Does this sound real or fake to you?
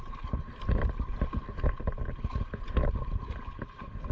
real